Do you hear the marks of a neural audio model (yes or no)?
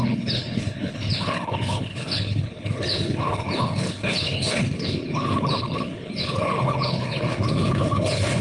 yes